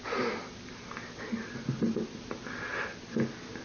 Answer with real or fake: real